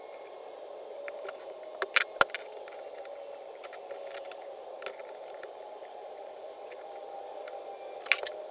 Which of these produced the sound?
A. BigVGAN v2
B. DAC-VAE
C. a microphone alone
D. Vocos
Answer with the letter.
C